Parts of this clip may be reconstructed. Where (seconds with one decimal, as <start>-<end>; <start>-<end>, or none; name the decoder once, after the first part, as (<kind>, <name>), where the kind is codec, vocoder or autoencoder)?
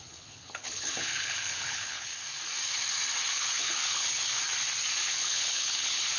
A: 0.0-2.1 (codec, HILCodec); 3.3-4.4; 5.0-6.2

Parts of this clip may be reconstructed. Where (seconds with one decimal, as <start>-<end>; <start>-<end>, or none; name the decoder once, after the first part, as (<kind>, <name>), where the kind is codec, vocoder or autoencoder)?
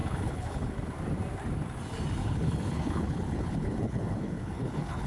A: 0.0-0.8 (codec, HILCodec); 2.2-5.1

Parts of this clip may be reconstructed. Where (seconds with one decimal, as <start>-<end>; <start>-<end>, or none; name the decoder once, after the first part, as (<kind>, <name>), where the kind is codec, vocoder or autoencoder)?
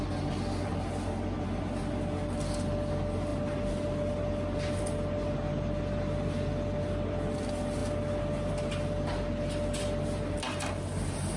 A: none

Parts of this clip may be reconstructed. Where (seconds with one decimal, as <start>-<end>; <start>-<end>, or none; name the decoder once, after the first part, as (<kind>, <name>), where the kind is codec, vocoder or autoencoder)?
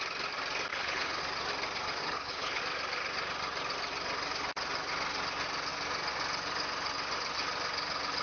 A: 0.7-1.2 (codec, HILCodec); 2.0-2.6